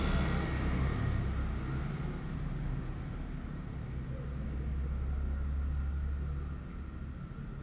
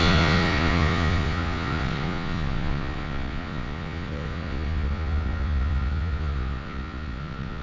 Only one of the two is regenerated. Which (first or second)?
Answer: second